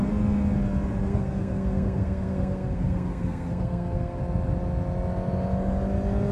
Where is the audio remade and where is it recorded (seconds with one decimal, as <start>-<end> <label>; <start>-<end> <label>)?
0.0-1.0 recorded; 1.0-4.2 remade; 4.2-6.3 recorded